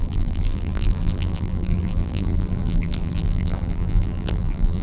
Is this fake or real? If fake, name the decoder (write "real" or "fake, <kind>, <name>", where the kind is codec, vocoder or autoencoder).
fake, vocoder, BigVGAN v2